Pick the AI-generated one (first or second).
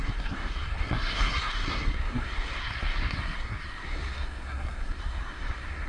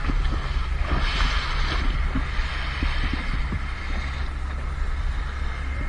first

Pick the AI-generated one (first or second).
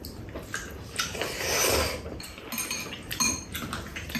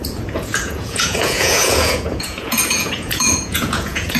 second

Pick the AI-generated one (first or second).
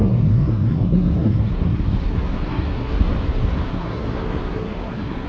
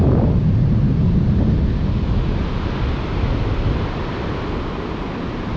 first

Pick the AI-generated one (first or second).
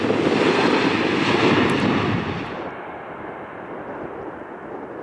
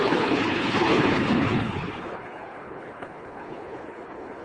second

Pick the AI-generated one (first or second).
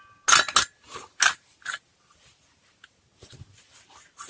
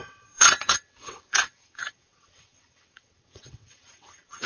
second